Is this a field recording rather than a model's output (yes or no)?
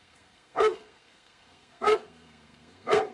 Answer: no